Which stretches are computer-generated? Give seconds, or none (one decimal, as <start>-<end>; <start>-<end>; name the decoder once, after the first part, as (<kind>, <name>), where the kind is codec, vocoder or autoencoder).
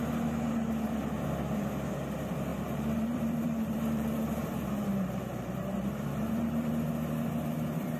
2.5-6.7 (vocoder, BigVGAN v2)